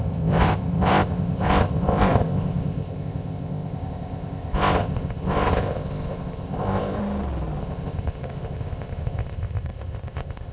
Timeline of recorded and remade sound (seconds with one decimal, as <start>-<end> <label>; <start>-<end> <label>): 0.0-7.0 remade; 7.0-7.6 recorded; 7.6-10.5 remade